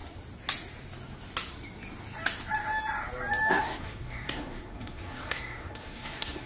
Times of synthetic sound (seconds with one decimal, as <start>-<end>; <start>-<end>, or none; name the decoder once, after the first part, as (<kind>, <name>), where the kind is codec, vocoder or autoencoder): 3.5-6.5 (codec, SNAC)